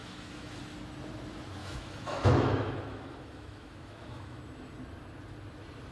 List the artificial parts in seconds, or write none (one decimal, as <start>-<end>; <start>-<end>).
0.0-0.6; 1.6-4.4